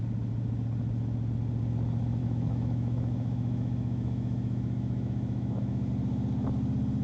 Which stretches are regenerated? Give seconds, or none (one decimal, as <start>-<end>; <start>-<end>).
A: 2.2-5.9